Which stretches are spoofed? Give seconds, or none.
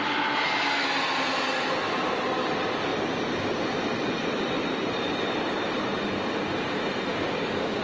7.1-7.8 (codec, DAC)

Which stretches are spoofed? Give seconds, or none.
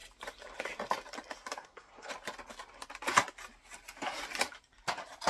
1.6-2.1 (codec, SNAC)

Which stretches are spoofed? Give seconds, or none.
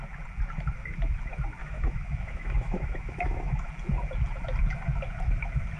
1.6-3.7 (autoencoder, DAC-VAE)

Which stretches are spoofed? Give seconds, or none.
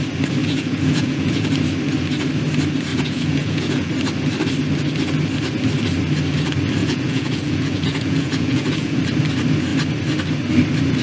0.4-1.5 (vocoder, Vocos); 2.9-3.9; 6.8-9.0